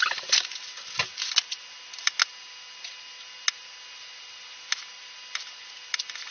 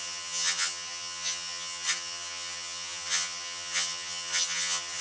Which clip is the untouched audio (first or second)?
first